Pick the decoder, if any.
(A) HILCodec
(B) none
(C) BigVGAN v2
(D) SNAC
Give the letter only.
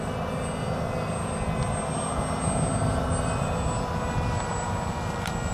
B